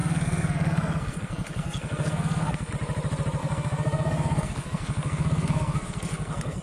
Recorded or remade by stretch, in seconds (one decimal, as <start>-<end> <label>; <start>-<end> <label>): 0.0-2.7 remade; 2.7-3.4 recorded; 3.4-6.6 remade